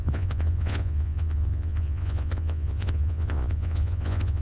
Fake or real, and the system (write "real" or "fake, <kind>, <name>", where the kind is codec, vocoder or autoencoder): fake, vocoder, Vocos